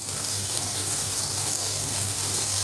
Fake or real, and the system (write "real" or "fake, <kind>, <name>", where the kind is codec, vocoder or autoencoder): fake, codec, DAC